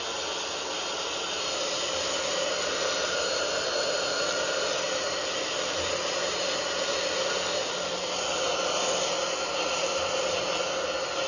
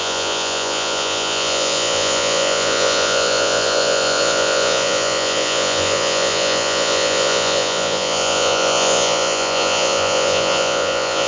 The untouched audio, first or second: first